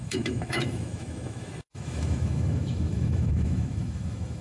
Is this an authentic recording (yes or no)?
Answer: no